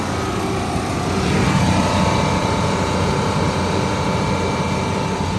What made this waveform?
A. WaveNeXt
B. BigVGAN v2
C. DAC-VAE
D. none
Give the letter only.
D